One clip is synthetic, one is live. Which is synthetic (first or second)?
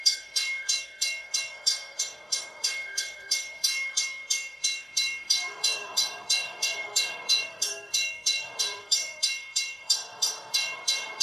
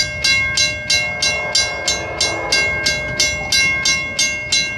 first